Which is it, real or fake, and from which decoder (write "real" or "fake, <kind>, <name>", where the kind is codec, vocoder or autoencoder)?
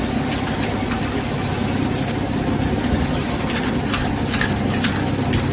real